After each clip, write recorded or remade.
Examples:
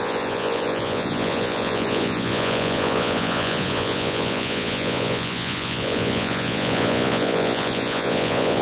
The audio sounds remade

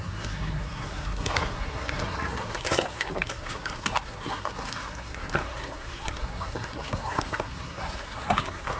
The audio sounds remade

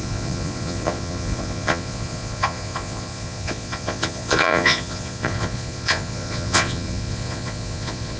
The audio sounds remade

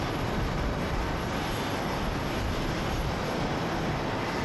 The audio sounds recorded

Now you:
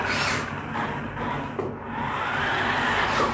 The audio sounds recorded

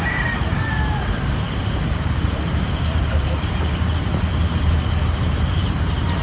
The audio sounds remade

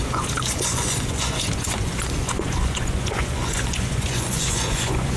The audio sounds remade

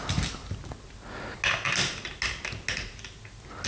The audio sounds recorded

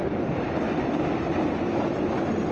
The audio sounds recorded